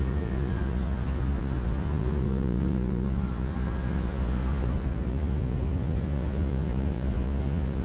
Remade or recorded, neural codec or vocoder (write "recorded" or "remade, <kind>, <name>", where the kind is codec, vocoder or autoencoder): remade, vocoder, Vocos